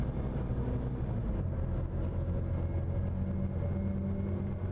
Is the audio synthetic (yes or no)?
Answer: no